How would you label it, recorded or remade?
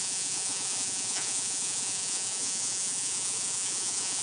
remade